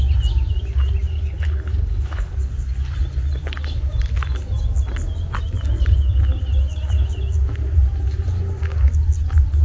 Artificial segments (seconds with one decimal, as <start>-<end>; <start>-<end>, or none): 1.1-2.3